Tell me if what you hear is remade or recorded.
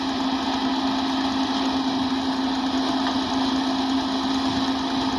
recorded